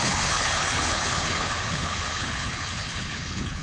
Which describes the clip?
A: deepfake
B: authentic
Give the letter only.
A